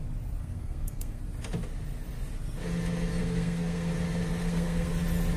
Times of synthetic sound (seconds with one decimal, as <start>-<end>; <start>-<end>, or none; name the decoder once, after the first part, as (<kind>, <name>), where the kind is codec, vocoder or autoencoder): 0.4-1.2 (codec, SNAC); 3.2-3.9; 4.4-4.9